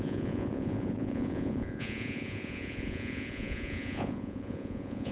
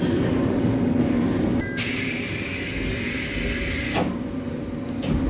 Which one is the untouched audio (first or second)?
second